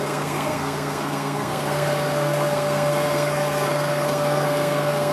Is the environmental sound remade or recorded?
remade